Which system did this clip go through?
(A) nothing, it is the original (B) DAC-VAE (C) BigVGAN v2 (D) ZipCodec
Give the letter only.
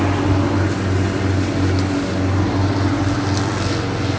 A